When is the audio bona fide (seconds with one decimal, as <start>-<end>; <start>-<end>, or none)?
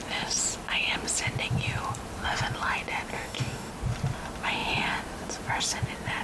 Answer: 0.0-3.1; 3.7-6.2